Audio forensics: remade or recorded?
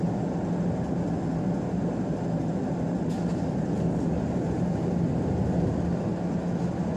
recorded